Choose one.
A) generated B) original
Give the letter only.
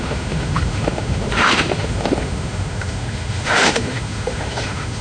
A